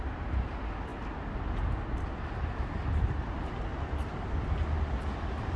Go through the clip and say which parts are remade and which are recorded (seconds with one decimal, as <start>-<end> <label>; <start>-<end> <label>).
0.0-5.6 recorded